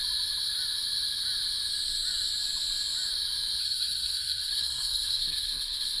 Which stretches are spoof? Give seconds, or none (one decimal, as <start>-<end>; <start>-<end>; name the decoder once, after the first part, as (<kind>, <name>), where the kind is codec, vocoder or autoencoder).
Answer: 3.6-6.0 (codec, SNAC)